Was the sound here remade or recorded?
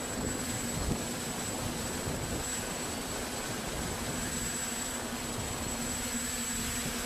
recorded